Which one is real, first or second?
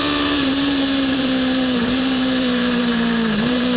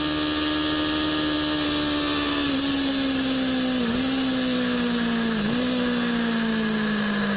second